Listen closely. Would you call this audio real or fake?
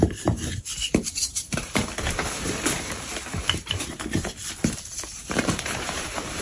fake